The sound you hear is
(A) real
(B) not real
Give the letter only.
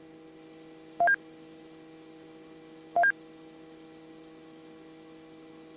A